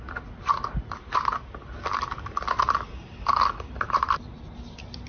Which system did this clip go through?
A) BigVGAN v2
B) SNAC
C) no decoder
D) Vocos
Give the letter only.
A